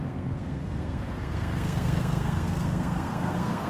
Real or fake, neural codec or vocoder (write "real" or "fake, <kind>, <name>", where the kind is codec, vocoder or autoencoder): fake, codec, SNAC